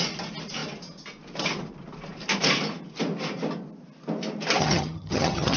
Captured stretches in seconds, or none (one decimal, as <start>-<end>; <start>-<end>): 0.0-4.6